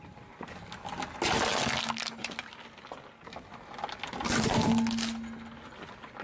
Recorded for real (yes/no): yes